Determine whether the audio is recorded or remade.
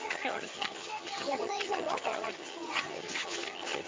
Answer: remade